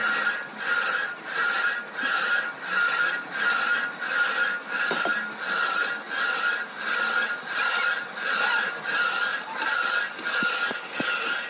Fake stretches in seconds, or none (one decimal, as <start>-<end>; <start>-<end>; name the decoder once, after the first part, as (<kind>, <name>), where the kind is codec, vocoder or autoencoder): none